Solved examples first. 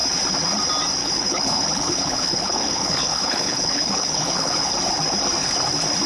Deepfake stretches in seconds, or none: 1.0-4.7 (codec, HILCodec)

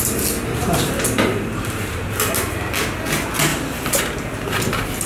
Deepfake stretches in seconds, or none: 0.6-2.3 (vocoder, BigVGAN v2); 3.5-4.0

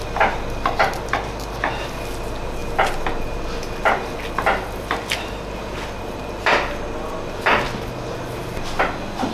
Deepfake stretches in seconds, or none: none

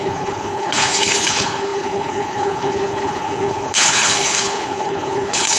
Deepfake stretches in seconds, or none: 0.0-5.6 (codec, HILCodec)

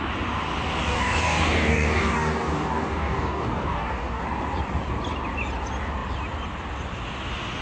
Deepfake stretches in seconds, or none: 0.8-4.2 (codec, DAC)

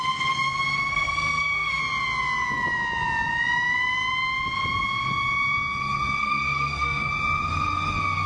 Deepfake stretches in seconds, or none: 0.9-1.8 (codec, SNAC); 6.2-7.1